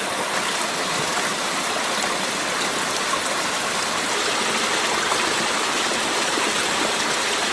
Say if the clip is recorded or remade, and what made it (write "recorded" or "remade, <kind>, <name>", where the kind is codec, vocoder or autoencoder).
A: recorded